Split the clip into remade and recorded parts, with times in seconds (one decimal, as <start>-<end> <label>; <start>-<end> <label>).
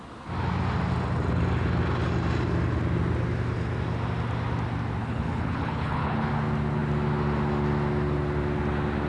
0.0-5.0 recorded; 5.0-6.3 remade; 6.3-9.1 recorded